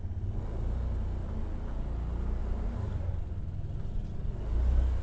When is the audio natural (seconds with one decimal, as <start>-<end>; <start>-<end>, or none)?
0.0-2.4; 3.2-5.0

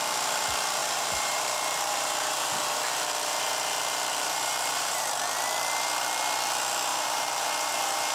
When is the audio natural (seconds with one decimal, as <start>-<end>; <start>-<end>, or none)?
0.0-0.8; 5.1-6.9

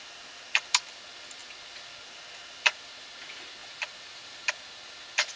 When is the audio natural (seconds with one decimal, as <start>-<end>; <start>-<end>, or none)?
0.0-3.6; 4.5-5.4